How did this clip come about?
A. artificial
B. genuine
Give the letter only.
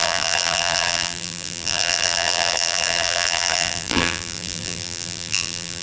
A